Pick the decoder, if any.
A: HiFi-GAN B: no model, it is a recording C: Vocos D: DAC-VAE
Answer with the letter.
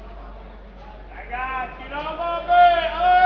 B